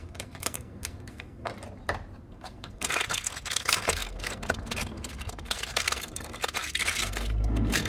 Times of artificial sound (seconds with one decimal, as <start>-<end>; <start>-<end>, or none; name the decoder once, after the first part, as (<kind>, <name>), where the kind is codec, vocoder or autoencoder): 0.0-1.5 (codec, SNAC); 2.3-7.9